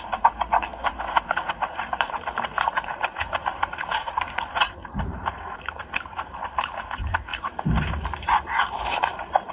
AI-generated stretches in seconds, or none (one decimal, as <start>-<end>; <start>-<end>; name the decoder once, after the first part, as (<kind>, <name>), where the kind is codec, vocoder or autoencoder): 0.0-9.5 (vocoder, BigVGAN v2)